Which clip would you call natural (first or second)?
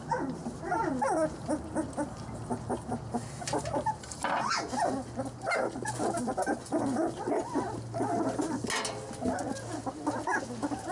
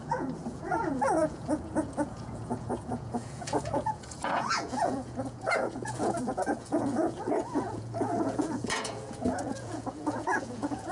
first